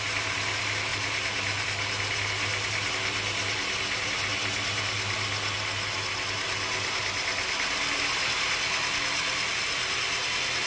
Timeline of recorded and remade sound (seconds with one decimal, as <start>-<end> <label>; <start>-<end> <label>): 0.0-10.7 recorded